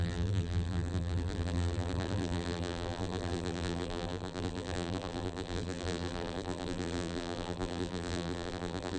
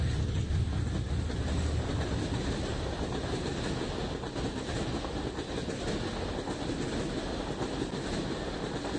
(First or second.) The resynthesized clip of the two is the first